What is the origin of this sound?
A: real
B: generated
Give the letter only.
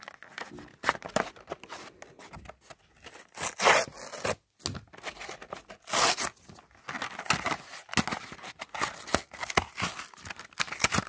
A